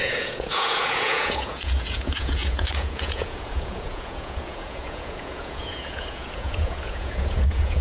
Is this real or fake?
fake